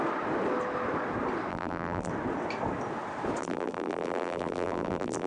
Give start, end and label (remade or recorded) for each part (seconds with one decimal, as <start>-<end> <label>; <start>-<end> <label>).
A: 0.0-1.5 recorded; 1.5-2.1 remade; 2.1-3.4 recorded; 3.4-5.3 remade